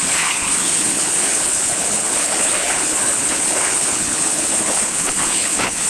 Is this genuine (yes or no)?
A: no